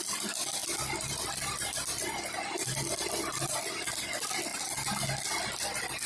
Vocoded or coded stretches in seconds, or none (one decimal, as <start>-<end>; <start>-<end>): 0.6-3.9